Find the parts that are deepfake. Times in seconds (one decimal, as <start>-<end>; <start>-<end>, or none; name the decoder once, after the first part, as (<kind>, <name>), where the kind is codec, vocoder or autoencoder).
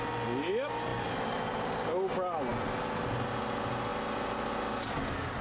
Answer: none